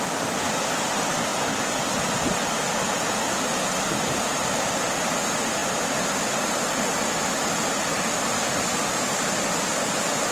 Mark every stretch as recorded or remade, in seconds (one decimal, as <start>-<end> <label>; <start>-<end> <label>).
0.0-10.3 recorded